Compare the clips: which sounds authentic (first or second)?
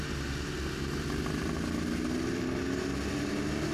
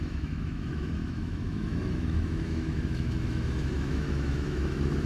first